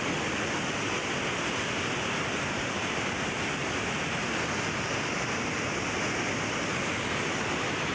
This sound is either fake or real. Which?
real